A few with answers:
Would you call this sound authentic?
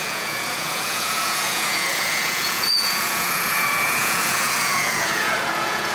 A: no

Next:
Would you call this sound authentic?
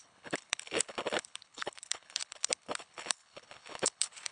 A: no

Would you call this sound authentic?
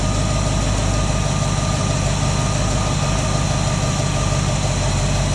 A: yes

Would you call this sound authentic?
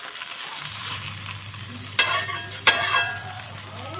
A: no